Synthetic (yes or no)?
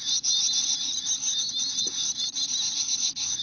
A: no